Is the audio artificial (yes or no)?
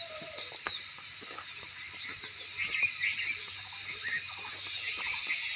no